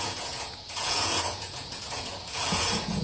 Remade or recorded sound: remade